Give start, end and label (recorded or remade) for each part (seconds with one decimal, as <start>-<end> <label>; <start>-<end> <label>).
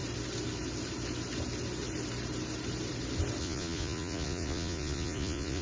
0.0-3.4 recorded; 3.4-5.6 remade